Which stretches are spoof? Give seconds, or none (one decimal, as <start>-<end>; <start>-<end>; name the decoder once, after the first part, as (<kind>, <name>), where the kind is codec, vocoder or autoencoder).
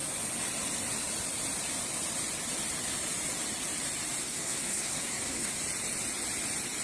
4.2-5.6 (codec, SNAC)